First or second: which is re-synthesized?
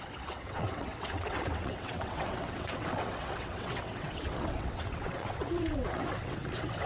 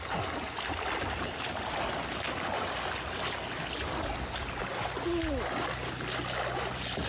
first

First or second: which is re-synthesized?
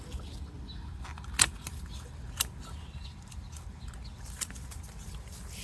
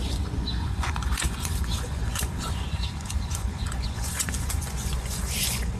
second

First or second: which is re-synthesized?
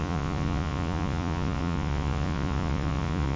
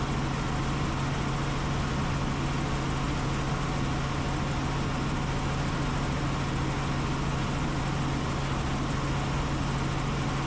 first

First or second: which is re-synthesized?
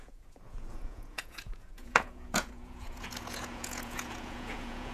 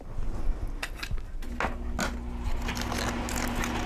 first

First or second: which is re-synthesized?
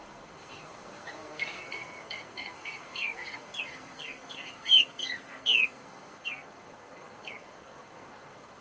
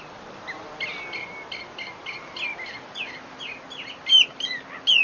first